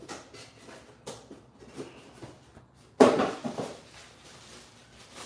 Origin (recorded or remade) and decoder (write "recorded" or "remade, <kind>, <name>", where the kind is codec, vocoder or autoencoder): recorded